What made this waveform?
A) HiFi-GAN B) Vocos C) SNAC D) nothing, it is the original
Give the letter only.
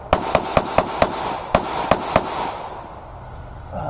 D